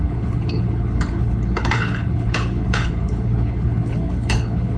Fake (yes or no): yes